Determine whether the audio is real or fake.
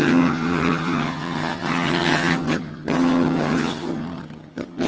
fake